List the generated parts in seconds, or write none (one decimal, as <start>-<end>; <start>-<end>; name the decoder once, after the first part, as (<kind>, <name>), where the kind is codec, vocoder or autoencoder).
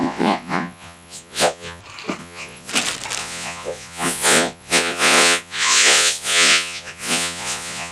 0.0-1.8 (vocoder, Vocos); 2.2-2.7; 3.2-7.9